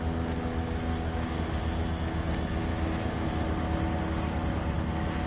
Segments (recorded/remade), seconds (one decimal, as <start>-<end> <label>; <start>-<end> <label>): 0.0-0.9 recorded; 0.9-1.4 remade; 1.4-2.7 recorded; 2.7-3.3 remade; 3.3-5.3 recorded